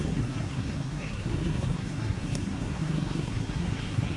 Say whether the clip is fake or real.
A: fake